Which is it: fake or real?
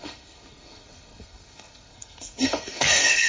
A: fake